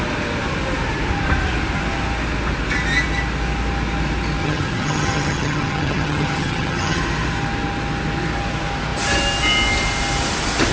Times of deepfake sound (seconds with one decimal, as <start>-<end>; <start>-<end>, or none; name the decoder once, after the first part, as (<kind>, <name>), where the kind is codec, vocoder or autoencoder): 4.4-7.0 (vocoder, HiFi-GAN)